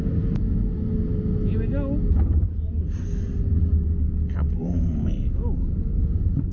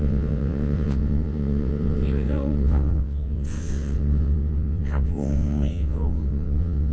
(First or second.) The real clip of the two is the first